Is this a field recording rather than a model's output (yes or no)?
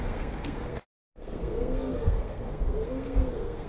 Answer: no